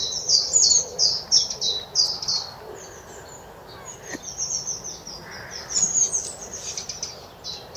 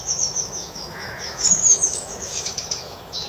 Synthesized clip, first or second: second